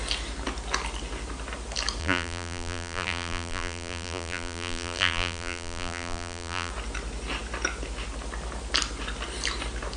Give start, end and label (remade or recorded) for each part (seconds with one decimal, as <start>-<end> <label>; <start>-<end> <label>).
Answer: 0.0-2.0 recorded; 2.0-6.7 remade; 6.7-10.0 recorded